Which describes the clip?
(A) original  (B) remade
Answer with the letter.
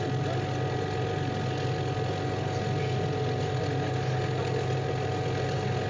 A